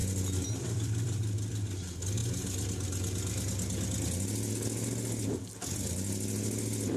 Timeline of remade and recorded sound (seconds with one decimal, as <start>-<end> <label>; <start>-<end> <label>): 0.0-1.5 remade; 1.5-7.0 recorded

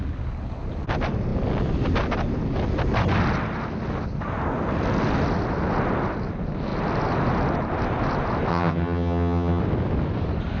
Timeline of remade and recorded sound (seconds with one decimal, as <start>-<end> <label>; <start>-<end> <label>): 0.0-8.5 recorded; 8.5-9.6 remade; 9.6-10.6 recorded